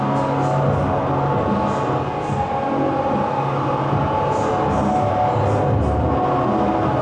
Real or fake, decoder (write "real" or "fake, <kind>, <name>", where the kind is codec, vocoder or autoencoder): real